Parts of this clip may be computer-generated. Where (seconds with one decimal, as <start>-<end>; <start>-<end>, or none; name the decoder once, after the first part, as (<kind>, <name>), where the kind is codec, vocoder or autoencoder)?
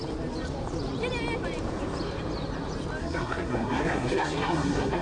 3.0-5.0 (codec, SNAC)